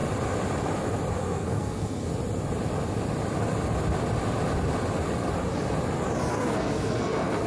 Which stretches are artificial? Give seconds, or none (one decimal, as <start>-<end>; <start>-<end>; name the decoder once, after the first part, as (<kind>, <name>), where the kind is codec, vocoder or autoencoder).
1.1-2.1 (codec, SNAC); 6.3-7.5